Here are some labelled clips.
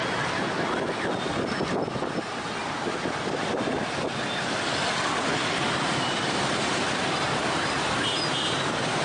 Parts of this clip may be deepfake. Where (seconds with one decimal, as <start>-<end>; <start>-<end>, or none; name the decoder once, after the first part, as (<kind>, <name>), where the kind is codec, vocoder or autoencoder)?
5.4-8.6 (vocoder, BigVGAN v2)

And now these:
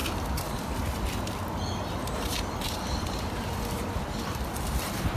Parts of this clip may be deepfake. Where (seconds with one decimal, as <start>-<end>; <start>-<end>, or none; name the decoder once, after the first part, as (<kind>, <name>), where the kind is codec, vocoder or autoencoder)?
2.0-4.0 (vocoder, BigVGAN v2)

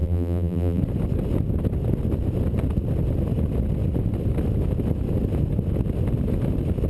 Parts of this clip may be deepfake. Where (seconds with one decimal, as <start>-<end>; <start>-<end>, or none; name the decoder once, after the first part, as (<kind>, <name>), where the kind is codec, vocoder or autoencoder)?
0.0-0.8 (vocoder, BigVGAN v2)